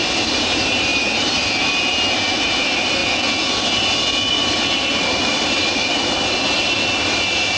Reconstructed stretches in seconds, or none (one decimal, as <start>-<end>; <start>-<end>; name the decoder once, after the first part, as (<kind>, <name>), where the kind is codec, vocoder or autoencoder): 0.0-3.0 (vocoder, BigVGAN v2); 4.3-7.6